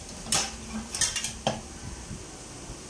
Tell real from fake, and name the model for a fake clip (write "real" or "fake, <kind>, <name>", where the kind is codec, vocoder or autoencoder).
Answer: real